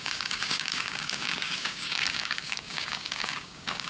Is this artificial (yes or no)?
yes